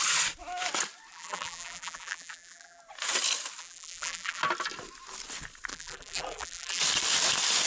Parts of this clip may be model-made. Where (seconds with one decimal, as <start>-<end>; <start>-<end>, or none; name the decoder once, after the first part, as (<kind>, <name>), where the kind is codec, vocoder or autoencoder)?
1.1-2.8 (vocoder, BigVGAN v2); 3.6-4.4; 5.7-6.8